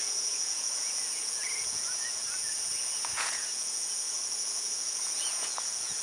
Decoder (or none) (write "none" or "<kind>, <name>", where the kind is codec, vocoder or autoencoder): vocoder, Vocos